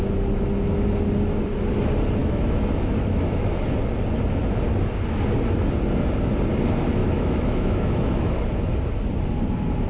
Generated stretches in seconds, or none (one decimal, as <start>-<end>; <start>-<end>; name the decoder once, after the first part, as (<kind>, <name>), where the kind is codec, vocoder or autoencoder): 2.2-3.6 (autoencoder, DAC-VAE); 7.0-8.7